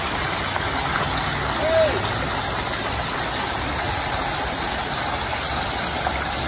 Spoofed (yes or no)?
no